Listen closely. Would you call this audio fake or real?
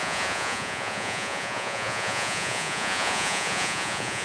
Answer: fake